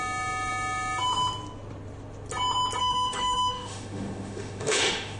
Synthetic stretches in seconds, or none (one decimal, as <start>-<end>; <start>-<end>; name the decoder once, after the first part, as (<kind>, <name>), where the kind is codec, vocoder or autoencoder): 2.8-5.2 (autoencoder, DAC-VAE)